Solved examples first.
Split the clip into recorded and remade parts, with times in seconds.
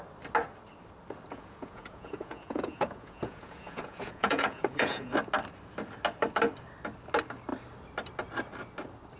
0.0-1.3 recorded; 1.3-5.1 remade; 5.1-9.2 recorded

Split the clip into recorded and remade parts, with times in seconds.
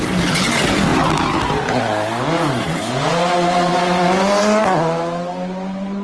0.0-6.0 recorded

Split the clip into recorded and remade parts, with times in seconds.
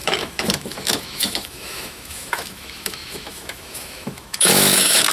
0.0-5.1 remade